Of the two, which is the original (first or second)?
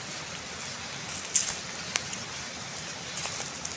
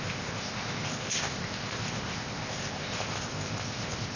first